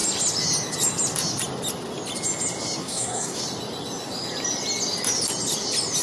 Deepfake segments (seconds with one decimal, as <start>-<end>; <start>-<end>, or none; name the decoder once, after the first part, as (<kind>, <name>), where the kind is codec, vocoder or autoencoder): 2.8-3.4 (codec, SNAC)